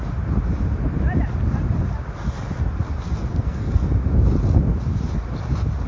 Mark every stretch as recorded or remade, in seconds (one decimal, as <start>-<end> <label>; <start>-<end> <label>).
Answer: 0.0-3.3 recorded; 3.3-3.8 remade; 3.8-5.9 recorded